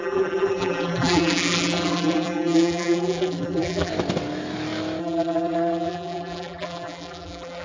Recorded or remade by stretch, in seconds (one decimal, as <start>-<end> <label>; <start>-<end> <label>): 0.0-3.9 remade; 3.9-5.0 recorded; 5.0-7.6 remade